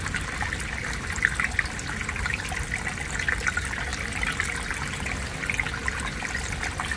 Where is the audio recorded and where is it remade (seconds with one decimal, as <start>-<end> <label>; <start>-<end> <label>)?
0.0-7.0 recorded

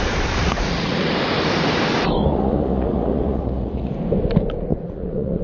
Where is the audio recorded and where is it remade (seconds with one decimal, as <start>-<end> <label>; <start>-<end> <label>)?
0.0-0.4 recorded; 0.4-1.1 remade; 1.1-2.2 recorded; 2.2-3.9 remade; 3.9-4.7 recorded; 4.7-5.4 remade

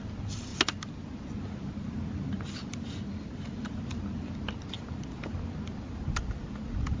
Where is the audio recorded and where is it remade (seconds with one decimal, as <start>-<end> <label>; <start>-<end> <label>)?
0.0-7.0 recorded

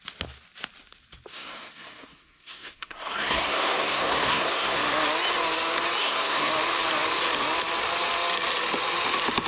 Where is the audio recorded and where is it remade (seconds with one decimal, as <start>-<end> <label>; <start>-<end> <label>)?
0.0-1.3 recorded; 1.3-4.8 remade; 4.8-6.0 recorded; 6.0-6.5 remade; 6.5-9.5 recorded

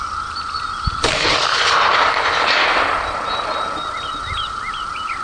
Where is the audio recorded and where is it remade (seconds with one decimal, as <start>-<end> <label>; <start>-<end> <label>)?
0.0-5.2 remade

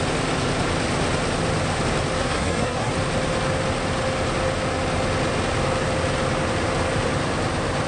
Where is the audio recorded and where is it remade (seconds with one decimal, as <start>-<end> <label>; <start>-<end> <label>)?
0.0-2.2 recorded; 2.2-2.9 remade; 2.9-7.9 recorded

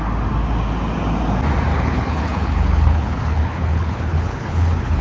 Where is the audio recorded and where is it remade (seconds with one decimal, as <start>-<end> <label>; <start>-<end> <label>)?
0.0-1.7 recorded; 1.7-5.0 remade

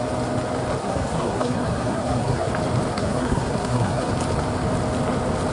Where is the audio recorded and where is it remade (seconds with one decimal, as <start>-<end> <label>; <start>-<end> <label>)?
0.0-0.8 recorded; 0.8-2.5 remade; 2.5-2.9 recorded; 2.9-4.1 remade; 4.1-5.5 recorded